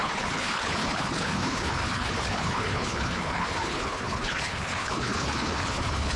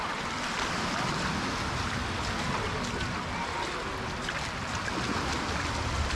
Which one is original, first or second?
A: second